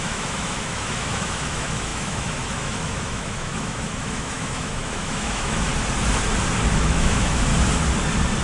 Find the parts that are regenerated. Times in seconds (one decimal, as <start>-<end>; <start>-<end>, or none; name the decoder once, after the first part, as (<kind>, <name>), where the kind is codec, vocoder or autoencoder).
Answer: 0.0-5.7 (autoencoder, DAC-VAE); 6.7-7.5

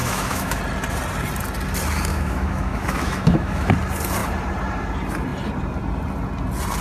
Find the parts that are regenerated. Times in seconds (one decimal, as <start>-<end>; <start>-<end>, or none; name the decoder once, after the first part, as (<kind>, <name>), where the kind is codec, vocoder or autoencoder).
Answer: 0.0-0.6 (autoencoder, DAC-VAE); 2.1-3.7

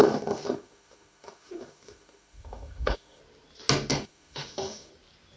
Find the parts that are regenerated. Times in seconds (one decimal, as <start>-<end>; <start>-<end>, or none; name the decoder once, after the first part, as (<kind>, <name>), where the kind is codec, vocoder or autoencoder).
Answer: 0.0-3.2 (autoencoder, DAC-VAE); 3.9-4.9

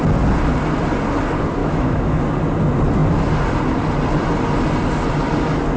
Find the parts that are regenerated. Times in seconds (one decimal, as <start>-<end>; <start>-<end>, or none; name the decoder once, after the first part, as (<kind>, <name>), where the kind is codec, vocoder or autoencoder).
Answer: 1.6-2.2 (autoencoder, DAC-VAE)

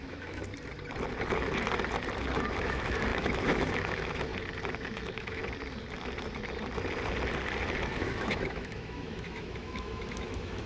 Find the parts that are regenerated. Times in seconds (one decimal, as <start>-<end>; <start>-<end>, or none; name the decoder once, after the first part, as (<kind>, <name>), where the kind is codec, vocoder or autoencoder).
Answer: 0.0-0.4 (autoencoder, DAC-VAE); 2.5-4.3; 4.8-5.4; 7.9-10.7

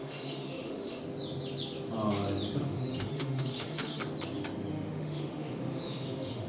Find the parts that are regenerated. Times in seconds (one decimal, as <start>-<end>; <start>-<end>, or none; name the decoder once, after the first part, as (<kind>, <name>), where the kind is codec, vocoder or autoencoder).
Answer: 0.0-1.0 (autoencoder, DAC-VAE); 2.6-4.0; 4.7-6.5

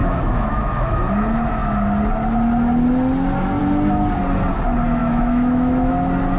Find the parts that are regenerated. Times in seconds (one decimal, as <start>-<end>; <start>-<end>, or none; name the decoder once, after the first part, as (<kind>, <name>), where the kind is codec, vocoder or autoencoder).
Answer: 0.0-1.0 (autoencoder, DAC-VAE); 5.0-5.9

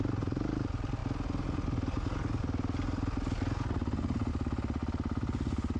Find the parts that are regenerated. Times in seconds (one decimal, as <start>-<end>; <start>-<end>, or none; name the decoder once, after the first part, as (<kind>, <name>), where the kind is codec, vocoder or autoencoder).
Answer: none